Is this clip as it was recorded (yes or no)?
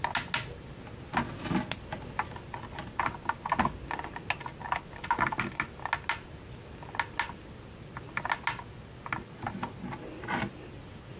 yes